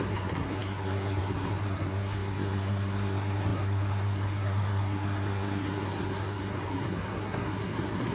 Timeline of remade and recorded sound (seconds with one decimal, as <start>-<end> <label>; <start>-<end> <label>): 0.0-8.1 remade